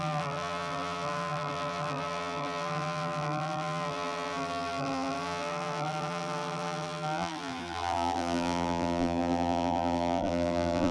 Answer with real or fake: fake